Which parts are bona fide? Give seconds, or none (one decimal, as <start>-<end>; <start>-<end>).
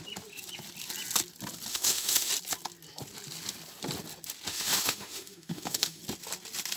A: 0.0-1.7; 2.3-4.5; 6.0-6.8